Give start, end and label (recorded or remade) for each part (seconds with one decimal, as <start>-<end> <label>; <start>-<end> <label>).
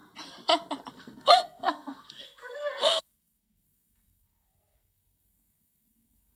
0.0-0.9 recorded; 0.9-6.4 remade